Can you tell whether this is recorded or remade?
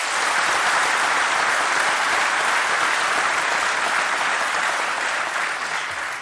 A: recorded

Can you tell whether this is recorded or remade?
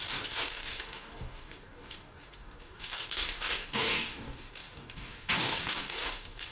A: remade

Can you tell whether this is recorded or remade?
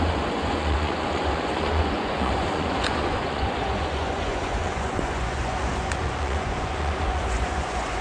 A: remade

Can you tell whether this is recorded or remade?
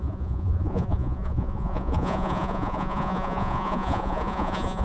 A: remade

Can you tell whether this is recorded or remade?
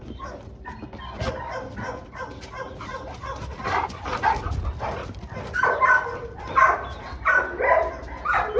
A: recorded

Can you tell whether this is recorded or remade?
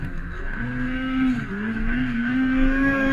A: remade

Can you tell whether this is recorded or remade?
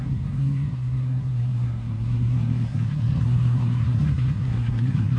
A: remade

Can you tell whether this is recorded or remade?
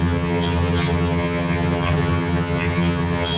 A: remade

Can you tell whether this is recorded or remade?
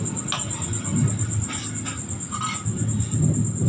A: recorded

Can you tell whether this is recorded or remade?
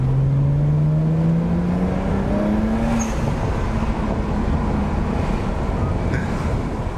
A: recorded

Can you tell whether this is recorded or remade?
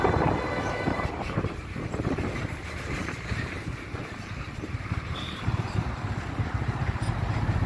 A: remade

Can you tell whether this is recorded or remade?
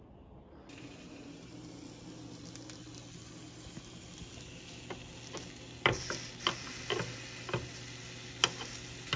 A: recorded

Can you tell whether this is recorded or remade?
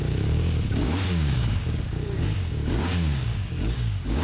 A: remade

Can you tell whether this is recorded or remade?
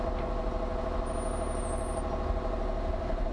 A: recorded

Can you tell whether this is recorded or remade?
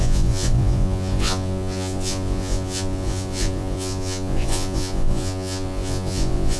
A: remade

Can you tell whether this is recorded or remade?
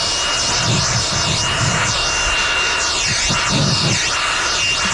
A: recorded